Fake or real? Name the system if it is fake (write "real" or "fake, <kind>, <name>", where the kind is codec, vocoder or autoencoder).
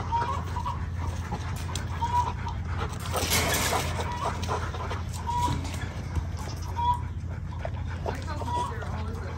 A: real